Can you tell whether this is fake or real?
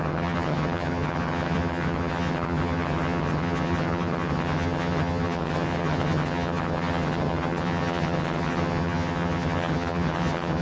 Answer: fake